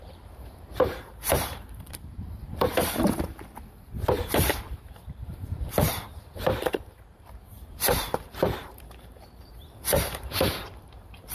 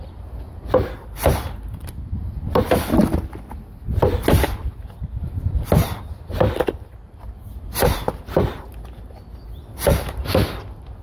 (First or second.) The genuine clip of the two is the second